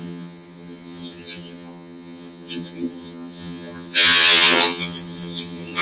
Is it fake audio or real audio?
fake